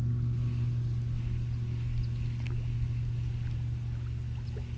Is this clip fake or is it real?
real